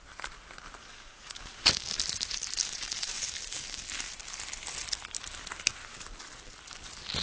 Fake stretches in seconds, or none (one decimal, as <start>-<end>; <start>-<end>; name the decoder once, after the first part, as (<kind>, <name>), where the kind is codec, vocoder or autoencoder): 0.8-2.0 (codec, DAC); 2.6-3.8